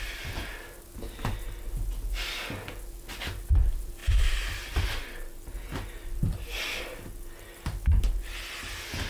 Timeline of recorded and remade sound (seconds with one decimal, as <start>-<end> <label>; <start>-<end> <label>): 0.0-9.1 recorded